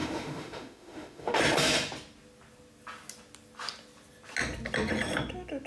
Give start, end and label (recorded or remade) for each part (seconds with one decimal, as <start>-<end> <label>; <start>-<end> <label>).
0.0-1.4 remade; 1.4-5.7 recorded